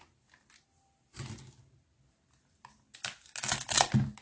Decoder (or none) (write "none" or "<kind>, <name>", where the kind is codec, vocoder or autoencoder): none